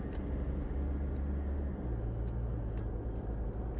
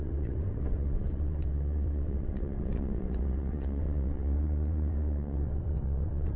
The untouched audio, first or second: first